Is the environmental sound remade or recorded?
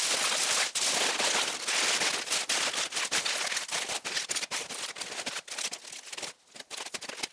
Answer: recorded